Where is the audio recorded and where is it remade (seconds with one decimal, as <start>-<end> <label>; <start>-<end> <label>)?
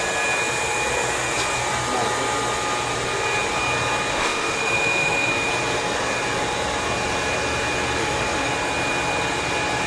0.0-4.1 recorded; 4.1-5.3 remade; 5.3-8.0 recorded; 8.0-8.5 remade; 8.5-9.9 recorded